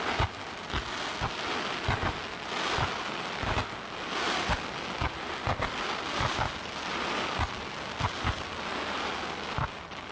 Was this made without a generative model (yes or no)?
yes